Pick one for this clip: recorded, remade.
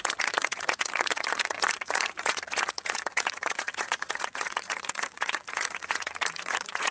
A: remade